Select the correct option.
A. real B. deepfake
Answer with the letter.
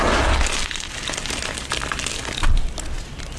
A